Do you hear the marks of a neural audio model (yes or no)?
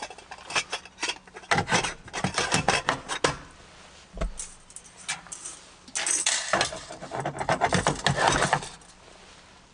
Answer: no